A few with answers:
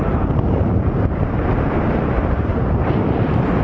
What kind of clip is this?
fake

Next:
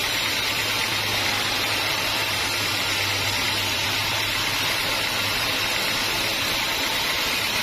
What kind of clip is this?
fake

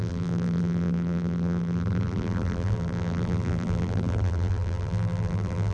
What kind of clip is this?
fake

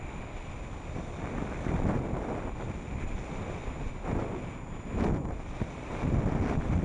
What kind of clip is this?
real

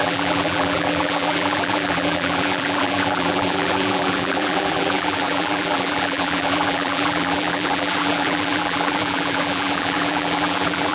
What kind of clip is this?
fake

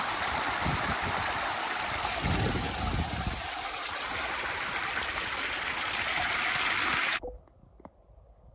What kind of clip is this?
real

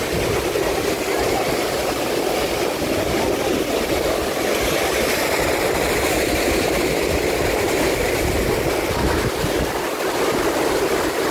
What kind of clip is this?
fake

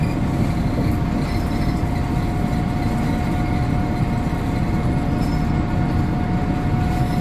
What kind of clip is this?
real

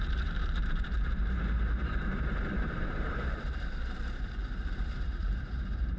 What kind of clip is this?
fake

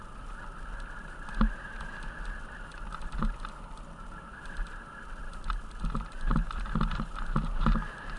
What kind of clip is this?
real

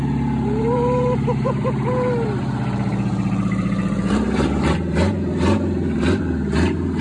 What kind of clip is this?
fake